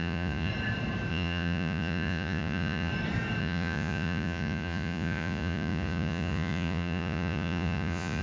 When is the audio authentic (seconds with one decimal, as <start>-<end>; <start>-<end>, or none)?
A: 0.5-1.1; 2.9-3.4